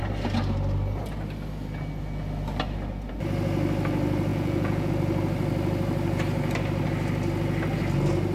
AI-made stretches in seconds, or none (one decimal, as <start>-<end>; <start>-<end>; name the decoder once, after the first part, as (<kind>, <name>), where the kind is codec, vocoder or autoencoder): 4.3-4.9 (vocoder, Vocos)